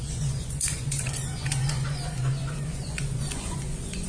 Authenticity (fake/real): fake